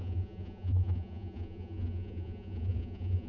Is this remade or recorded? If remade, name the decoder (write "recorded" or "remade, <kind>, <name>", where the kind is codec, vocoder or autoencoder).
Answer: remade, vocoder, Vocos